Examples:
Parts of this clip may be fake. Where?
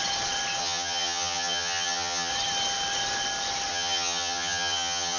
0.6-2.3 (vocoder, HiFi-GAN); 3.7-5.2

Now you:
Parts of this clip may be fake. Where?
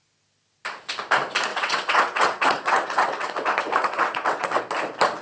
1.5-4.6 (vocoder, WaveNeXt)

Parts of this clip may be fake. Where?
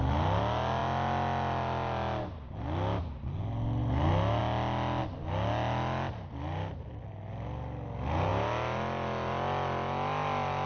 none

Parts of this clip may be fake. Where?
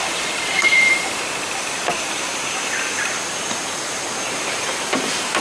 0.0-5.4 (vocoder, BigVGAN v2)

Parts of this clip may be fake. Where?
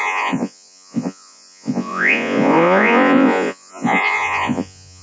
0.0-5.0 (vocoder, Vocos)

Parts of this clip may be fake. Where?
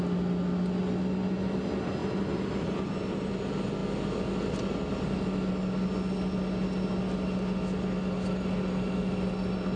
none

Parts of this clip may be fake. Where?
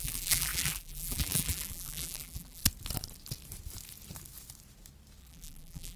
0.0-2.6 (vocoder, BigVGAN v2); 5.2-6.0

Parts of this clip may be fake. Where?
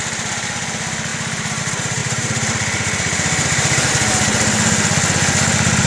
2.0-3.9 (vocoder, BigVGAN v2)